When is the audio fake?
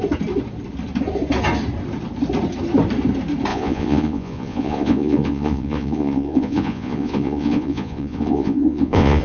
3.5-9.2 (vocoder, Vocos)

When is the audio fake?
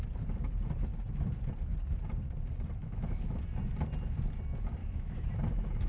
2.8-3.4 (autoencoder, DAC-VAE); 4.8-5.3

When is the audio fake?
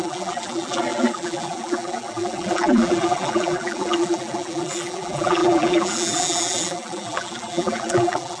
0.0-8.4 (vocoder, BigVGAN v2)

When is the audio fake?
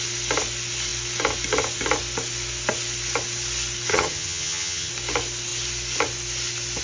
3.9-4.9 (vocoder, HiFi-GAN)